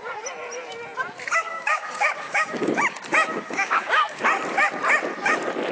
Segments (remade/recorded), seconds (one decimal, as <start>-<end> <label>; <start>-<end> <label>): 0.0-1.5 recorded; 1.5-2.8 remade; 2.8-3.3 recorded; 3.3-4.2 remade; 4.2-5.7 recorded